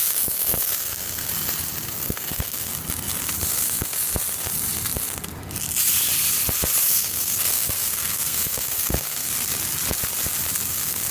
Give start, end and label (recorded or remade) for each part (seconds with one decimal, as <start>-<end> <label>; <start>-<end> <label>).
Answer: 0.0-1.3 remade; 1.3-1.9 recorded; 1.9-2.7 remade; 2.7-3.5 recorded; 3.5-3.9 remade; 3.9-6.9 recorded; 6.9-9.3 remade; 9.3-10.7 recorded; 10.7-11.1 remade